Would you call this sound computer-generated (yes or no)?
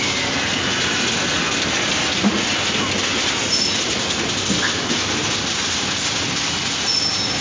no